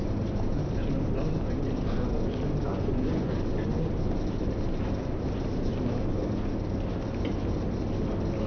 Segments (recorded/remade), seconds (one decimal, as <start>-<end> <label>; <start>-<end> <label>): 0.0-2.7 recorded; 2.7-3.3 remade; 3.3-8.5 recorded

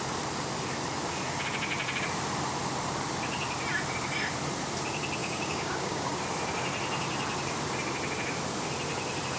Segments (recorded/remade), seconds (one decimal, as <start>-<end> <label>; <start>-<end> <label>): 0.0-5.2 recorded; 5.2-6.2 remade; 6.2-9.4 recorded